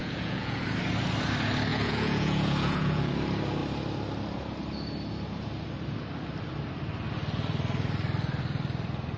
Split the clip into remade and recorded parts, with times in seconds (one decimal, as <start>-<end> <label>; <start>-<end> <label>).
0.0-0.6 remade; 0.6-1.7 recorded; 1.7-3.1 remade; 3.1-9.2 recorded